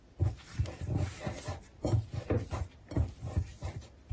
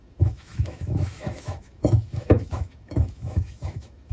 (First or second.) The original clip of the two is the first